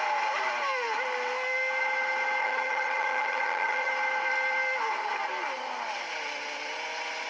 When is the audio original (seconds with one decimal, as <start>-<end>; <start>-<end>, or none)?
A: 0.0-2.4; 3.9-7.3